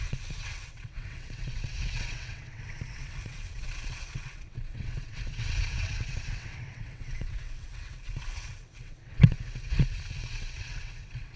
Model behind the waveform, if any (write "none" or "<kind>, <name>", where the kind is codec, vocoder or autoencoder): vocoder, WaveNeXt